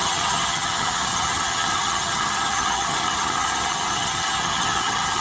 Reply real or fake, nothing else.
fake